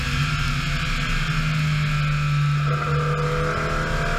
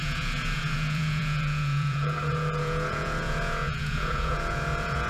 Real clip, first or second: first